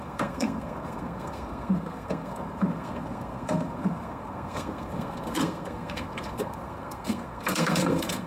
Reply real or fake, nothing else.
fake